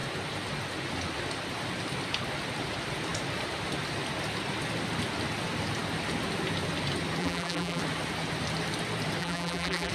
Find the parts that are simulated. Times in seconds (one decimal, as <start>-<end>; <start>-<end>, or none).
7.2-7.8; 9.2-9.9